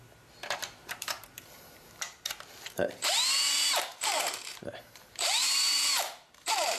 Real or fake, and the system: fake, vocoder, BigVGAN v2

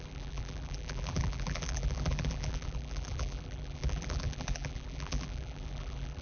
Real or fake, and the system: fake, vocoder, BigVGAN v2